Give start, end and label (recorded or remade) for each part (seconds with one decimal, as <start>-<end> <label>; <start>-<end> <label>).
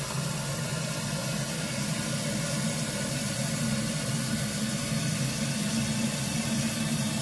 0.0-7.2 recorded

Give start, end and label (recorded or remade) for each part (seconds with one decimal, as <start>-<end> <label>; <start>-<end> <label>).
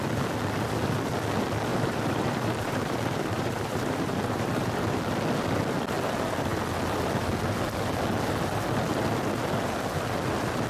0.0-1.7 recorded; 1.7-5.0 remade; 5.0-10.7 recorded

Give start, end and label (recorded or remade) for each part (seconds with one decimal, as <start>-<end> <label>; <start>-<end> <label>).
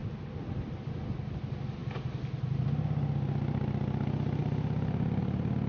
0.0-5.7 recorded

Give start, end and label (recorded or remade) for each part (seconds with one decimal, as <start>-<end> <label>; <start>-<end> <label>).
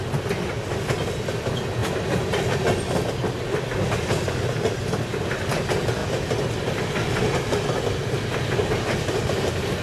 0.0-1.8 recorded; 1.8-3.7 remade; 3.7-9.8 recorded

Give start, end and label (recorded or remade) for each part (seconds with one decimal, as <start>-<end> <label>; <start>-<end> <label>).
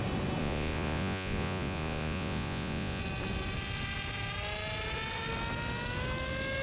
0.0-0.4 recorded; 0.4-3.0 remade; 3.0-6.6 recorded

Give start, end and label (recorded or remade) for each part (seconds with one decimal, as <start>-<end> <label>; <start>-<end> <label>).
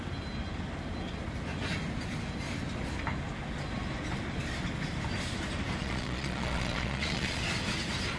0.0-5.8 recorded; 5.8-7.4 remade; 7.4-8.2 recorded